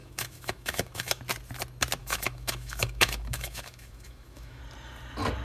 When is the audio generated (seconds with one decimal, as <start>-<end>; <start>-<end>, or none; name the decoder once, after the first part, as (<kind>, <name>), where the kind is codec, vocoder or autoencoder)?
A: 0.0-1.2 (autoencoder, DAC-VAE); 2.0-4.6

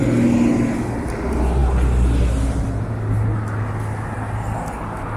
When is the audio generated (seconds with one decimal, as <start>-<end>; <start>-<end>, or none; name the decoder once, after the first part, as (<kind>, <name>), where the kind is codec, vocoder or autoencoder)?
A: none

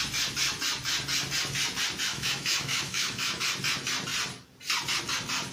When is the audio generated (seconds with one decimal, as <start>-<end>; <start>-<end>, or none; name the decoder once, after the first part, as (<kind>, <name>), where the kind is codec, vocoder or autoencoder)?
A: 2.1-3.4 (autoencoder, DAC-VAE)

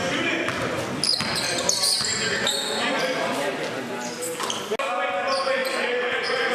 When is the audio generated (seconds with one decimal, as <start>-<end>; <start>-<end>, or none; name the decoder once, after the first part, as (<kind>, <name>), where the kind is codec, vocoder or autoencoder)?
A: none

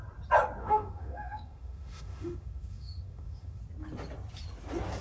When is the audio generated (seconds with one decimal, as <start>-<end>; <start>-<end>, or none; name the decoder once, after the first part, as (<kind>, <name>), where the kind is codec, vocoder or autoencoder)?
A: 0.6-3.6 (autoencoder, DAC-VAE)

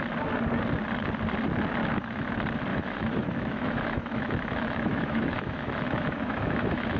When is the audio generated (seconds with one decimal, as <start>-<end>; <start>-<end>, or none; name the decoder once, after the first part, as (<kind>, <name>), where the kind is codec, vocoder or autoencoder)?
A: 1.8-2.3 (autoencoder, DAC-VAE); 2.7-7.0

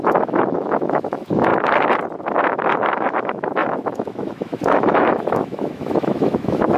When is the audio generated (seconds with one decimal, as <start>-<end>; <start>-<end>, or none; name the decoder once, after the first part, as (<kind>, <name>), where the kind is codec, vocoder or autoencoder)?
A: 0.0-1.5 (autoencoder, DAC-VAE); 2.2-6.8